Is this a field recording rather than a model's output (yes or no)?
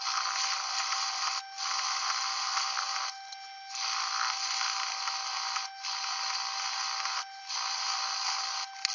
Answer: yes